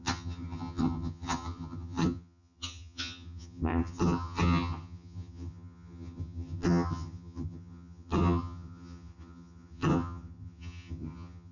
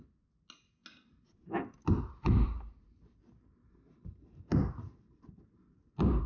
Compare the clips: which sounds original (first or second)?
second